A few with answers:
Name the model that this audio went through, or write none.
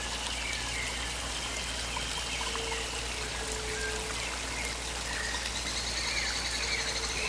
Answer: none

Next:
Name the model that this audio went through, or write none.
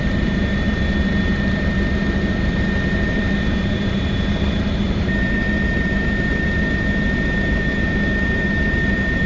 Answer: vocoder, BigVGAN v2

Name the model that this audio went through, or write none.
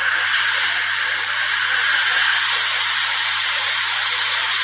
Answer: vocoder, BigVGAN v2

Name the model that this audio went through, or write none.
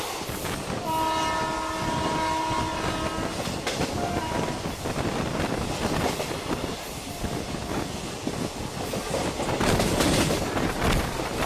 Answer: none